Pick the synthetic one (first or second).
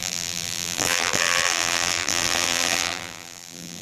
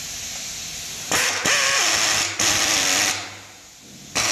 first